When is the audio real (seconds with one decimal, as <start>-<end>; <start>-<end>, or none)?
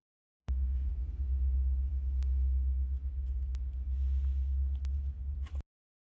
0.9-6.1